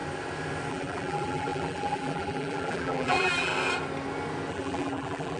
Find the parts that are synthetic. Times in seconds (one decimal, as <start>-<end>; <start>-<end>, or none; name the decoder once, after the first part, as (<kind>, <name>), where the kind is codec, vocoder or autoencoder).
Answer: 0.7-3.5 (vocoder, BigVGAN v2); 4.5-5.4